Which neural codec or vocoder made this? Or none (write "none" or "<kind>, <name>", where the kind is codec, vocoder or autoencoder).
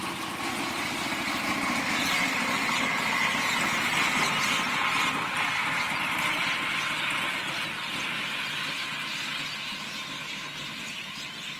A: none